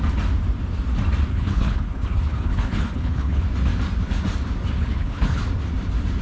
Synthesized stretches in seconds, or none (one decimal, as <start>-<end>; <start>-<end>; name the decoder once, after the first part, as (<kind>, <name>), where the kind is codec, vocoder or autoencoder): 1.3-3.4 (codec, HILCodec); 4.8-5.4